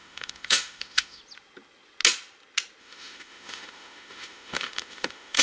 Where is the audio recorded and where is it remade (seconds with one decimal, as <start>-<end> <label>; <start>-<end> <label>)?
0.0-1.2 remade; 1.2-2.8 recorded; 2.8-5.4 remade